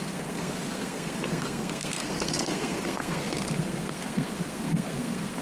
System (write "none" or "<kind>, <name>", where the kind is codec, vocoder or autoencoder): codec, SNAC